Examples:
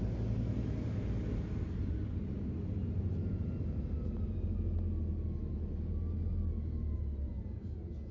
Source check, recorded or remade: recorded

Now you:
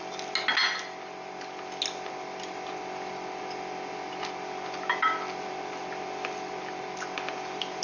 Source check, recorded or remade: recorded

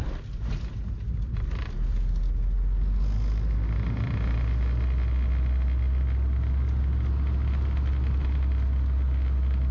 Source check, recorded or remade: recorded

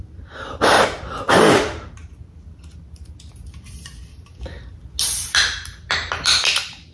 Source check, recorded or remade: recorded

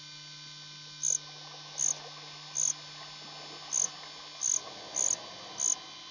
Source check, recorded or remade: recorded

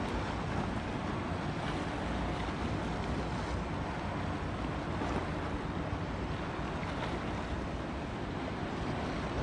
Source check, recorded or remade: recorded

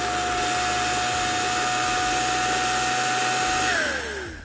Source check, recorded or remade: recorded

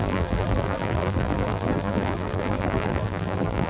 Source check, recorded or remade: remade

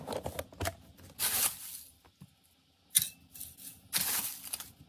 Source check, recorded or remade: recorded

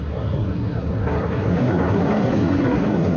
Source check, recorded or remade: remade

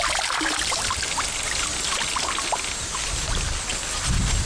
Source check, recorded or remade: recorded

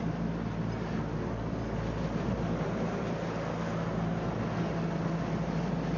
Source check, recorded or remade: recorded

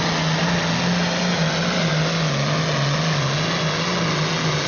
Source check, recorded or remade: recorded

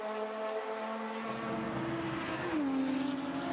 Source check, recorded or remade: recorded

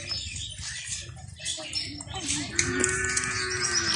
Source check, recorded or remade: recorded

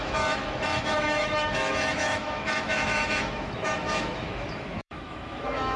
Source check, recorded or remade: remade